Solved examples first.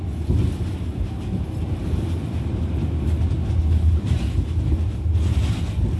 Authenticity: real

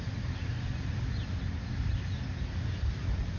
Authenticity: real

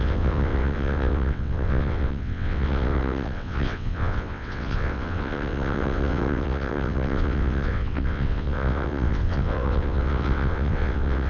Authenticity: fake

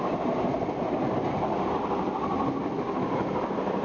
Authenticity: real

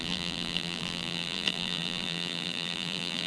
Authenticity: fake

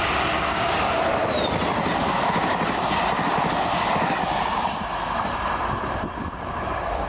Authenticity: real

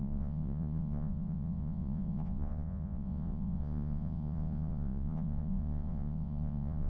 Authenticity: fake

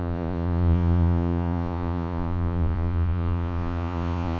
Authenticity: fake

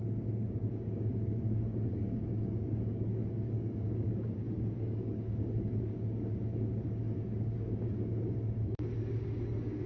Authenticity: fake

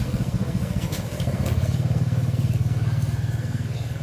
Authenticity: fake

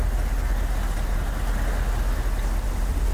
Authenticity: real